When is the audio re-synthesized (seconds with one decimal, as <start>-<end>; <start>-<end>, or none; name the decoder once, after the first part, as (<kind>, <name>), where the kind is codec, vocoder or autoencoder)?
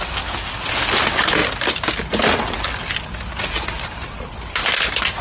none